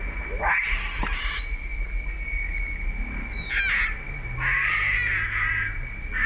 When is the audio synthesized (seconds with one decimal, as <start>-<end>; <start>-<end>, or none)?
none